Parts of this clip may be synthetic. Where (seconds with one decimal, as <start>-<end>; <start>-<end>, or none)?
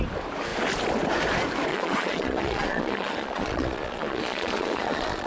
1.7-5.3